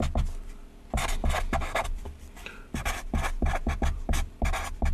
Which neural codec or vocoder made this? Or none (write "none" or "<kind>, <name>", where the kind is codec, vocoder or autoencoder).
vocoder, BigVGAN v2